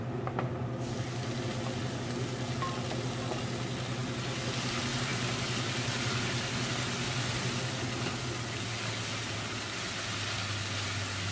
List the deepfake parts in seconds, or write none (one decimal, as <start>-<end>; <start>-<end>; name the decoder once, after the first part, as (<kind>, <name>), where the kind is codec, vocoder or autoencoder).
none